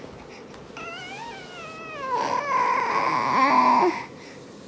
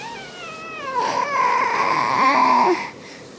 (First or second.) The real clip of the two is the first